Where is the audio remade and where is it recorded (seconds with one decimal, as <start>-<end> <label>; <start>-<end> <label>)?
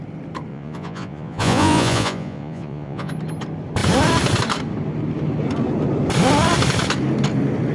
0.0-0.5 recorded; 0.5-3.1 remade; 3.1-7.7 recorded